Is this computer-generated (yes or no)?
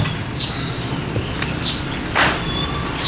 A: no